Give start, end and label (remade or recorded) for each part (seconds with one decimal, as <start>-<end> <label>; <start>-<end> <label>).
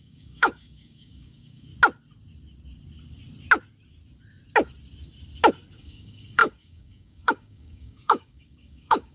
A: 0.0-1.7 remade; 1.7-5.8 recorded; 5.8-9.1 remade